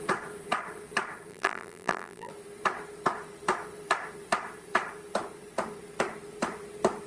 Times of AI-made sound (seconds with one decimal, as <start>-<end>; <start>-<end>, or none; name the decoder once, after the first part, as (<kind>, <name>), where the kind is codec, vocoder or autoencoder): 1.3-2.3 (vocoder, BigVGAN v2)

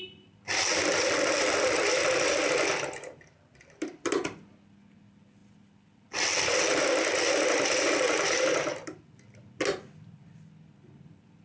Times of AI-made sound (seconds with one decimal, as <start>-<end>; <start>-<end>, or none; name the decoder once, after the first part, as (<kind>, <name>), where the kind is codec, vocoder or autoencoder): 0.7-2.3 (vocoder, BigVGAN v2)

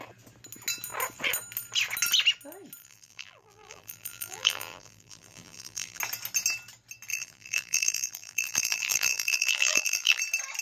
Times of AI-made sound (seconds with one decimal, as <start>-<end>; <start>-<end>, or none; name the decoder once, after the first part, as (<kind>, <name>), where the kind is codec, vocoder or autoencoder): 2.8-6.0 (vocoder, BigVGAN v2); 7.1-10.2

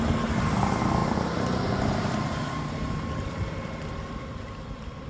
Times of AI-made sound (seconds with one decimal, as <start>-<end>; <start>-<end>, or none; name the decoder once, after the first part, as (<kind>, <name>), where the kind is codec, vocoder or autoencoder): 1.0-4.1 (vocoder, BigVGAN v2)

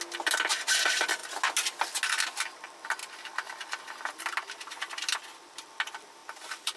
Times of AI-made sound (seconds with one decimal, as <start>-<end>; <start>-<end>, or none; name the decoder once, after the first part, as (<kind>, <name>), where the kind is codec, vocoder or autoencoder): 3.0-3.8 (vocoder, BigVGAN v2); 6.2-6.8

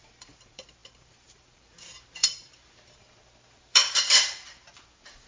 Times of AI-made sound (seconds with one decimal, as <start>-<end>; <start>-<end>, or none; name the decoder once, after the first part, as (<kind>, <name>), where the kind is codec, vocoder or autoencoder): 0.0-5.3 (vocoder, BigVGAN v2)